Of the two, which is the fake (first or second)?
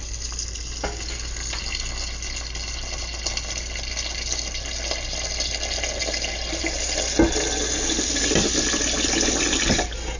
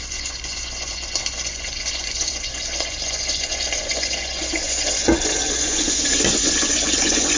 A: second